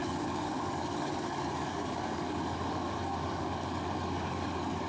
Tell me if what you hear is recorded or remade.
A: remade